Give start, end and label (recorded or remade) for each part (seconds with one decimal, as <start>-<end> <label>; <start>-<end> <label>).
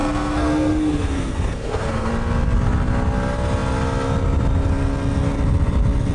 0.0-2.1 remade; 2.1-6.1 recorded